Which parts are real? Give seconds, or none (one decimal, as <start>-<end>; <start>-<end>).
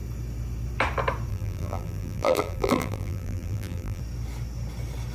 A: 0.0-1.3; 4.0-5.1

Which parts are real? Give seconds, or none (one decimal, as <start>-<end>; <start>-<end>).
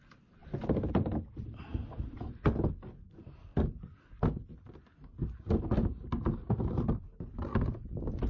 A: 0.0-8.3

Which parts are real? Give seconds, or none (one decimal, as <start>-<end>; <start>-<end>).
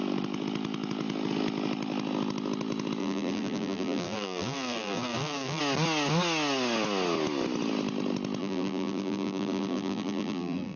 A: 0.0-3.0; 5.6-8.4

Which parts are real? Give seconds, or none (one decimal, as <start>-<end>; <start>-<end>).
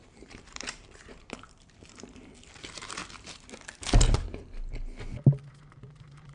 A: 3.0-5.6